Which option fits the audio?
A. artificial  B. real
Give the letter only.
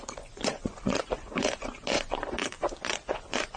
A